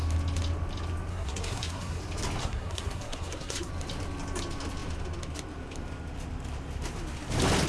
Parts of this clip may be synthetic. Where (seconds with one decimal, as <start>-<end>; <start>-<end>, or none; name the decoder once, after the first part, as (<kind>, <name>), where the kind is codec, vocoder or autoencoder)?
1.1-2.0 (codec, SNAC); 2.4-3.7